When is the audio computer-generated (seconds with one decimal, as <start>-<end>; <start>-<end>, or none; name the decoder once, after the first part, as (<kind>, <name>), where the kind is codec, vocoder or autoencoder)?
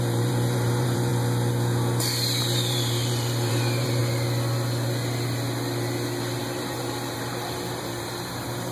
0.0-1.1 (vocoder, BigVGAN v2); 2.4-4.0; 6.4-8.7